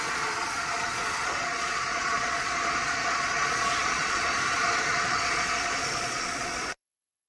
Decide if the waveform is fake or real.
fake